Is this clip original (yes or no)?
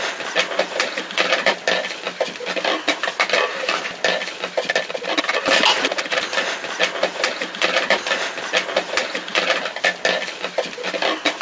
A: yes